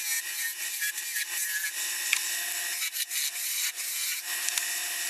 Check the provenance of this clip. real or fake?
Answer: real